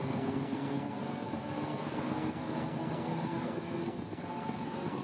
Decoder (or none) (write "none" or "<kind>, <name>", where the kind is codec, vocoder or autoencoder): codec, SNAC